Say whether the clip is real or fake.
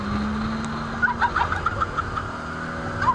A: real